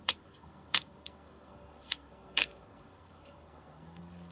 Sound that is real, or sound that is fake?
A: fake